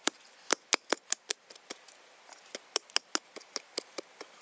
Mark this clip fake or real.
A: real